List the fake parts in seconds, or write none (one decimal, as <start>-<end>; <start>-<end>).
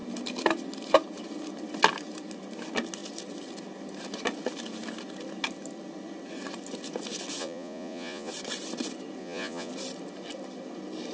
7.4-8.3; 9.2-9.7